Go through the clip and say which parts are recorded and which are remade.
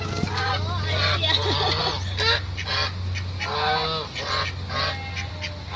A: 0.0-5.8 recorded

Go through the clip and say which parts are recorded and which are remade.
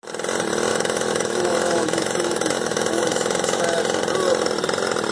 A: 0.0-0.7 recorded; 0.7-3.8 remade; 3.8-5.1 recorded